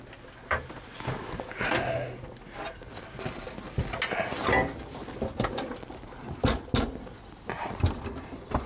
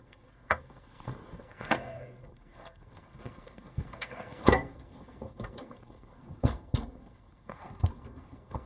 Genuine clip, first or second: first